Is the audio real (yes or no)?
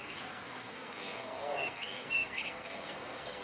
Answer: no